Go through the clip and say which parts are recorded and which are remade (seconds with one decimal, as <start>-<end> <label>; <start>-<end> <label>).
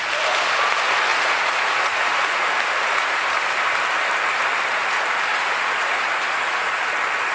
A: 0.0-1.1 recorded; 1.1-2.5 remade; 2.5-5.3 recorded; 5.3-6.8 remade; 6.8-7.3 recorded